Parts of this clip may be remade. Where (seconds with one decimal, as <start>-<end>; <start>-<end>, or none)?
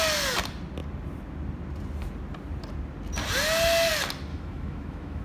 4.3-5.2